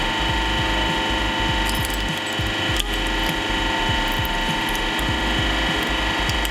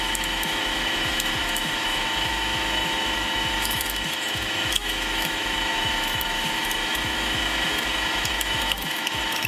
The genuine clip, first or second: first